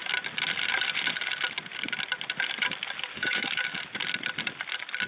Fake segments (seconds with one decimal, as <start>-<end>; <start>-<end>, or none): 3.1-3.8